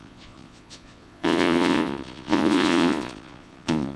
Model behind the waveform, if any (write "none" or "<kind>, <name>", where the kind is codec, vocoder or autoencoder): vocoder, Vocos